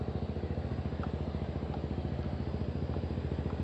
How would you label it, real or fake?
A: real